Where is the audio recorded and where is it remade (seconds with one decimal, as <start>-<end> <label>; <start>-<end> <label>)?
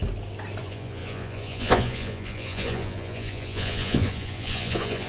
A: 0.0-0.6 recorded; 0.6-5.1 remade